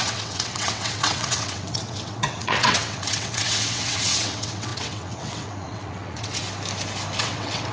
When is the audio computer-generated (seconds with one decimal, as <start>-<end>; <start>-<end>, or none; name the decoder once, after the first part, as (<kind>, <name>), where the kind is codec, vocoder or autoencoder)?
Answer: 0.0-6.4 (vocoder, WaveNeXt); 7.2-7.7